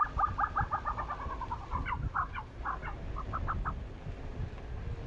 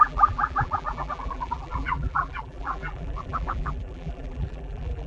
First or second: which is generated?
second